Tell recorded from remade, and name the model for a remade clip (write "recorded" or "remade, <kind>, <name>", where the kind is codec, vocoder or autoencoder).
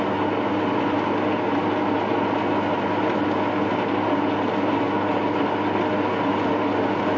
recorded